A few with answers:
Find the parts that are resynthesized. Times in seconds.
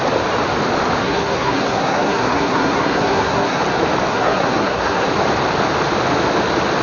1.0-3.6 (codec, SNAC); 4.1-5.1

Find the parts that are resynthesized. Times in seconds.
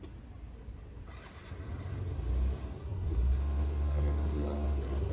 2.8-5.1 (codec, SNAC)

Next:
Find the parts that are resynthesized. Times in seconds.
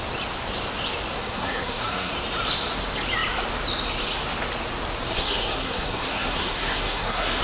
1.2-2.1 (codec, SNAC); 5.1-7.4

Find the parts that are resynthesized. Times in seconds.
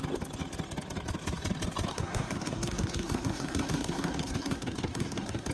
1.9-5.5 (codec, SNAC)